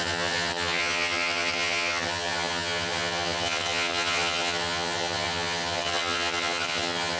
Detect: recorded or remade remade